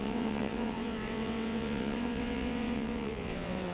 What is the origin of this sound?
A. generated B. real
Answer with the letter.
A